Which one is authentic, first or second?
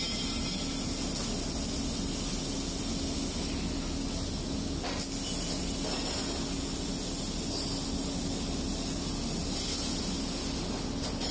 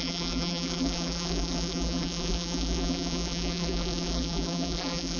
first